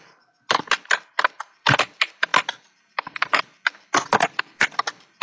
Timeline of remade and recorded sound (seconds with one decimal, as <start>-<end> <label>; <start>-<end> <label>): 0.0-5.2 recorded